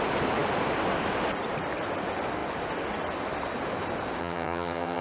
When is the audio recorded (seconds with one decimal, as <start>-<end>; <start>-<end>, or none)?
0.0-4.2

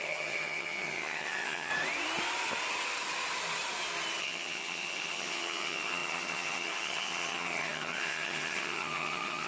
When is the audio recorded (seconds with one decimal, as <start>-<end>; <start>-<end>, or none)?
1.7-4.2

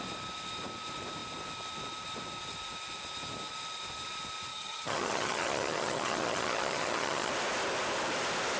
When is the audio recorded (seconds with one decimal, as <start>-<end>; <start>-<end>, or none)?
0.0-4.5; 7.3-8.6

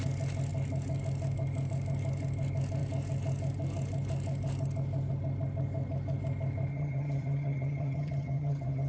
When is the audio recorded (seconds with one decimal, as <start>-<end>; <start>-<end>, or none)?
0.0-6.7